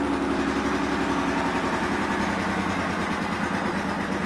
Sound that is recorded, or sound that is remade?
recorded